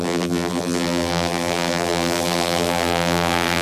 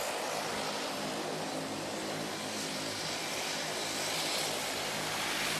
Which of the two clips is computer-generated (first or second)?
first